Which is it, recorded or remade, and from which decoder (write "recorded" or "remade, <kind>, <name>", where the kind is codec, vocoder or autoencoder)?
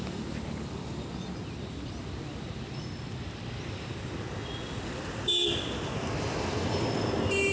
recorded